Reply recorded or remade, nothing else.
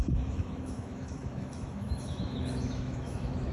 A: remade